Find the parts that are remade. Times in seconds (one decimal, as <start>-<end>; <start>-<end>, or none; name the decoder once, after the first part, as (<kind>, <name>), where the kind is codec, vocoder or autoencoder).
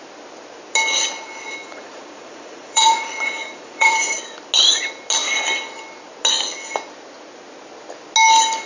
1.6-4.2 (vocoder, Vocos)